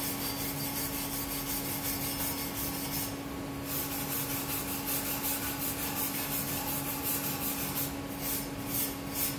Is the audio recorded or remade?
recorded